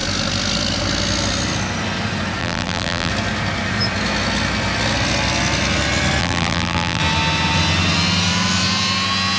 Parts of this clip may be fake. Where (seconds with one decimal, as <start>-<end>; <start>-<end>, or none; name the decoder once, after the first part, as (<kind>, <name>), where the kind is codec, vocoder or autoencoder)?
2.4-3.1 (vocoder, BigVGAN v2); 6.2-7.0